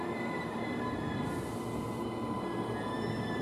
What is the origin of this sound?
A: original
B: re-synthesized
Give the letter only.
A